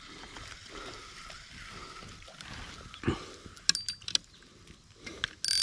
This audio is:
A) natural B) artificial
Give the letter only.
A